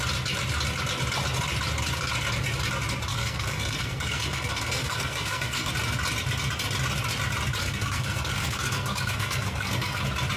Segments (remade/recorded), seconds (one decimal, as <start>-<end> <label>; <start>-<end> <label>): 0.0-3.1 recorded; 3.1-5.7 remade; 5.7-7.6 recorded; 7.6-10.0 remade; 10.0-10.4 recorded